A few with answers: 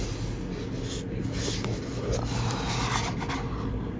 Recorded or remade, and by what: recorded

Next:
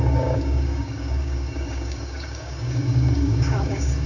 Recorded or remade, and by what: remade, codec, DAC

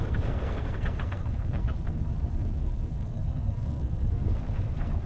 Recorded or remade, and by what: remade, codec, SNAC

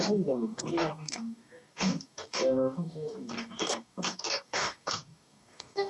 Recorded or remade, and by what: remade, codec, DAC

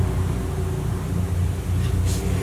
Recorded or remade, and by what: recorded